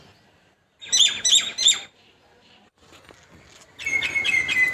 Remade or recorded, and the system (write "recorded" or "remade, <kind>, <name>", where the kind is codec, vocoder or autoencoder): recorded